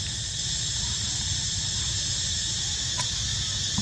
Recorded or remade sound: recorded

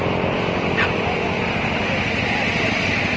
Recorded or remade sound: recorded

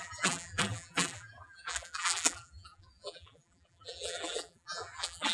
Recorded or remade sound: remade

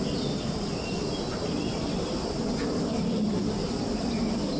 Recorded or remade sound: recorded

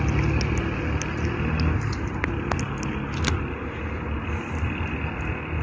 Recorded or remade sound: recorded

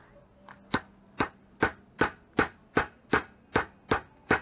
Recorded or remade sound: recorded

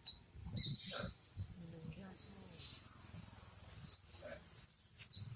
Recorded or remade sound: recorded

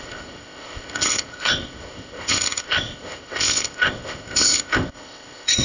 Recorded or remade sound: remade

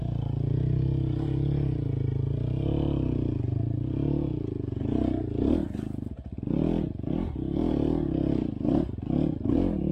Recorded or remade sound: recorded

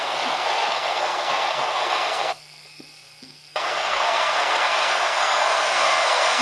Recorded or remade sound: remade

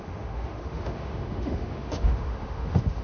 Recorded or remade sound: remade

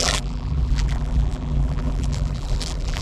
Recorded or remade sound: remade